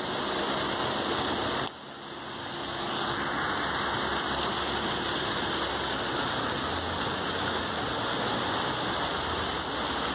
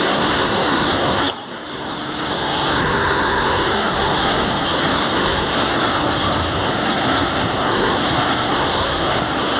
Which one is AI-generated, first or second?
second